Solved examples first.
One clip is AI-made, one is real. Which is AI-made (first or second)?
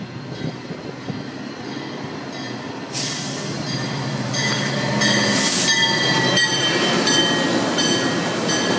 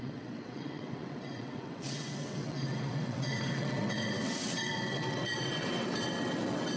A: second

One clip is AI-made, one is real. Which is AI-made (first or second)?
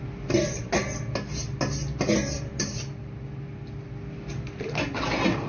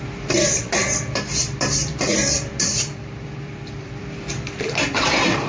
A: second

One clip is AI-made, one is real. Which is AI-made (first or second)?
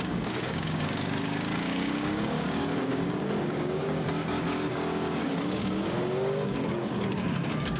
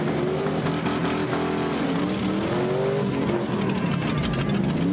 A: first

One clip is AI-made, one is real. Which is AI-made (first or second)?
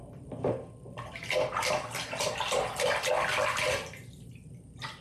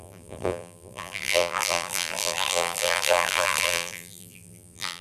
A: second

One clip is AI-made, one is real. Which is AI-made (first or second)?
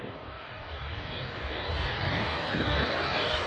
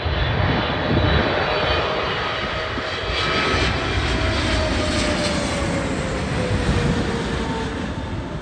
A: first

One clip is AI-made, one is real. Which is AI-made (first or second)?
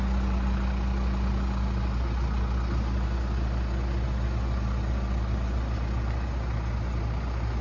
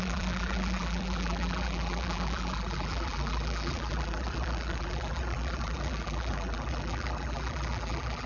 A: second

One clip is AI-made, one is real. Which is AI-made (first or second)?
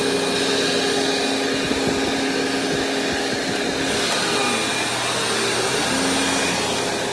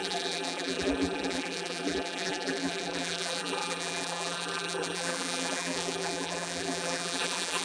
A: second